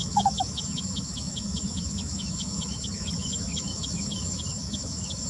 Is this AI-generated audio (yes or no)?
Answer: yes